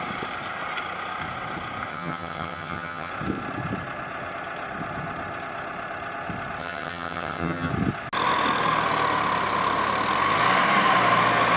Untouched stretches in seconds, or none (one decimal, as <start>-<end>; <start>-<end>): 0.0-1.9; 3.1-6.6; 7.7-11.6